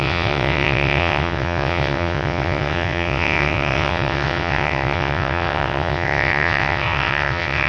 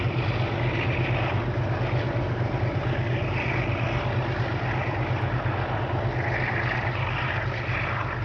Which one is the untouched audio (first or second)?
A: second